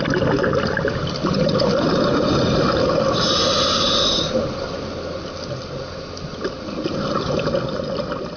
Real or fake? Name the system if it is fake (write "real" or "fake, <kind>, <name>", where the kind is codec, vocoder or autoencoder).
real